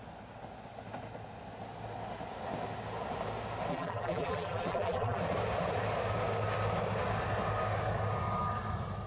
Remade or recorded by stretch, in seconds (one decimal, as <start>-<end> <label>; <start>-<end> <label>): 0.0-3.7 recorded; 3.7-5.2 remade; 5.2-9.1 recorded